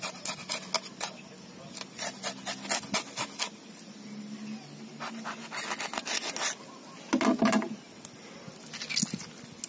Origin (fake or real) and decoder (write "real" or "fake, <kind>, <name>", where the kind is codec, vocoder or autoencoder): real